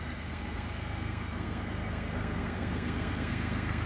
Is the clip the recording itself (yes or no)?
no